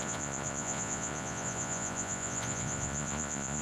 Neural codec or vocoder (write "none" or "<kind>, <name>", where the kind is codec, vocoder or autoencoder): vocoder, Vocos